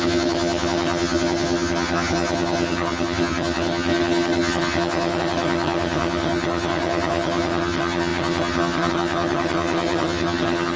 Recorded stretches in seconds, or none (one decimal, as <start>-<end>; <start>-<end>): none